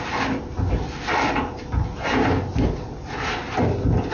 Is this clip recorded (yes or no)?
yes